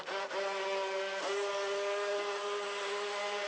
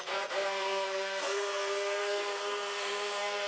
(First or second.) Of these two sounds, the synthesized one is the second